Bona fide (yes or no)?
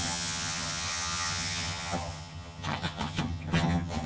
no